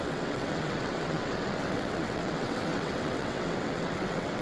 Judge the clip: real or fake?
fake